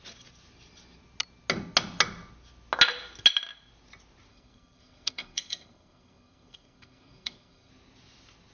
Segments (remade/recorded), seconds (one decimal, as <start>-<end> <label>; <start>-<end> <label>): 0.0-4.3 recorded; 4.3-7.7 remade; 7.7-8.5 recorded